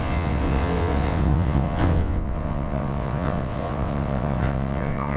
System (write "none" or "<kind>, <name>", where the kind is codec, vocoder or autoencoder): vocoder, WaveNeXt